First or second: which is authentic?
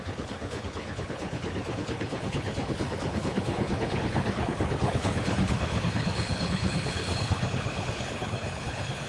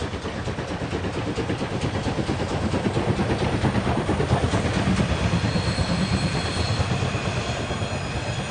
second